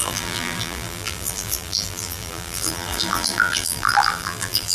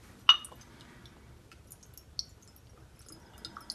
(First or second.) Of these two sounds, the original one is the second